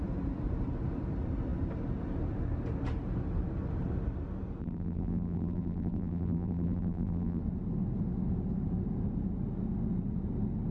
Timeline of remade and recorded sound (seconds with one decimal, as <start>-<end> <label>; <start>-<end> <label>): 0.0-4.6 recorded; 4.6-7.4 remade; 7.4-10.7 recorded